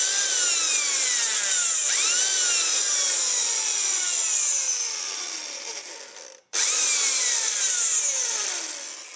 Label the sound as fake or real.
real